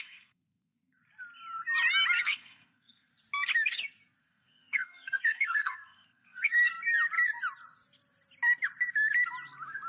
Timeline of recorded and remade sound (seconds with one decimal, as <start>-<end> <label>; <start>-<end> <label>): 0.0-1.0 remade; 1.0-2.2 recorded; 2.2-3.1 remade; 3.1-4.2 recorded; 4.2-6.7 remade; 6.7-9.9 recorded